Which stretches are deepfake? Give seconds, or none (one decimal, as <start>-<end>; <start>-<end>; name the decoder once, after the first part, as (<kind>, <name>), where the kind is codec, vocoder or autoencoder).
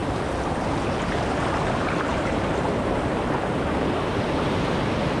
2.1-4.4 (vocoder, BigVGAN v2)